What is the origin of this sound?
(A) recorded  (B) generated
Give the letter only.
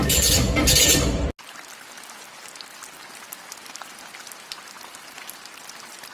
A